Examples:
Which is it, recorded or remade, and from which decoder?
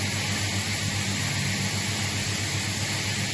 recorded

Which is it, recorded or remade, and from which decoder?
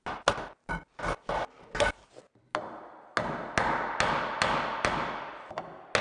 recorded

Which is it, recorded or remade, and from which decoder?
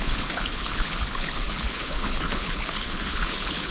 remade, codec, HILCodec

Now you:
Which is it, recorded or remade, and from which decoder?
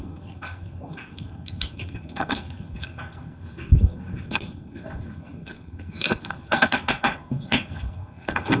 remade, codec, SNAC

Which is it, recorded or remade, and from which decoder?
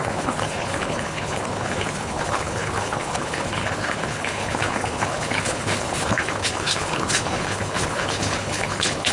remade, codec, HILCodec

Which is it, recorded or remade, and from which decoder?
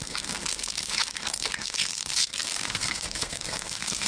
remade, codec, SNAC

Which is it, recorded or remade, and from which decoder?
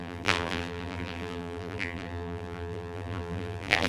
remade, vocoder, BigVGAN v2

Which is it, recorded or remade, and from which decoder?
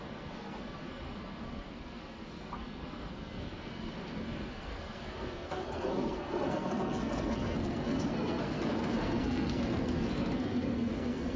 remade, codec, SNAC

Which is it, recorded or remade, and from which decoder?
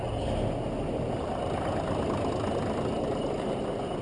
recorded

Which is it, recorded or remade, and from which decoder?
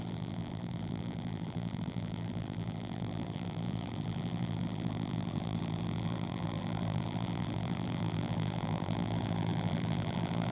remade, vocoder, BigVGAN v2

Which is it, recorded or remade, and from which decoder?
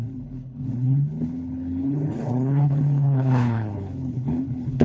remade, codec, HILCodec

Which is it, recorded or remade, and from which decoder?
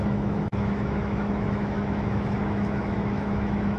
remade, autoencoder, DAC-VAE